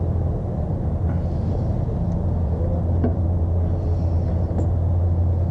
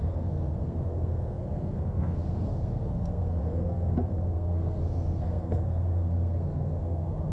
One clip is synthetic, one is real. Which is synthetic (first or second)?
second